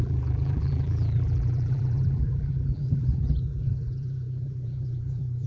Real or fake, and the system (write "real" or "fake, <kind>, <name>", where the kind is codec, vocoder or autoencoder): fake, vocoder, BigVGAN v2